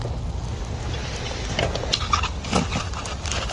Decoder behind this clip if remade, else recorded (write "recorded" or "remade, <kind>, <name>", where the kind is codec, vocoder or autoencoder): recorded